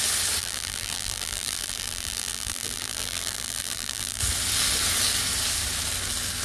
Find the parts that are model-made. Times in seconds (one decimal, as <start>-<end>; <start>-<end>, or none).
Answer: 0.4-4.2